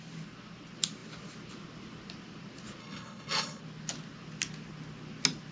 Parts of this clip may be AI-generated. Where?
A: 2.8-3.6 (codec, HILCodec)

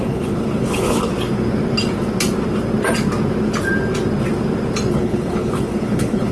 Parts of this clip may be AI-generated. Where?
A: 0.0-1.1 (codec, HILCodec); 4.9-6.3

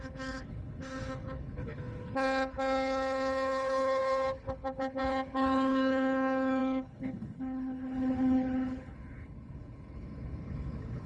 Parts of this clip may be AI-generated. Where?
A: 0.0-11.1 (codec, HILCodec)

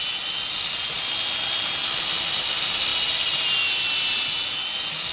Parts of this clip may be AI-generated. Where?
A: none

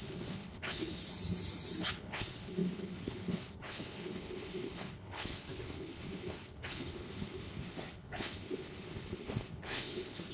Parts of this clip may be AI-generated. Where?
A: 0.0-1.0 (codec, HILCodec); 1.9-10.3

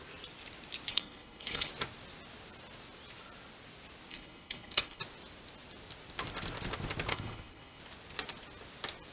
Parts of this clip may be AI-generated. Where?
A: 0.9-1.7 (codec, HILCodec); 4.1-5.0; 7.1-7.8